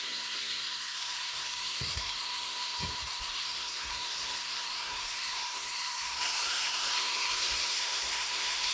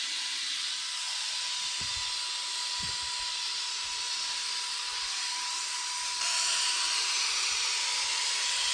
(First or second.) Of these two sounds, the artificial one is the first